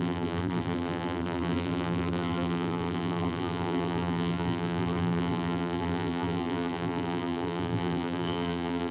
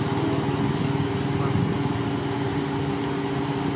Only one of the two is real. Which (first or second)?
second